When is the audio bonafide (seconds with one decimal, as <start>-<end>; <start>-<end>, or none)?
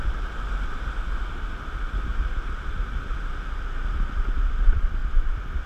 0.0-2.1; 3.3-5.0